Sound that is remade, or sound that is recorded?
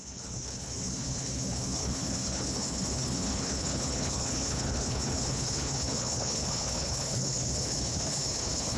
remade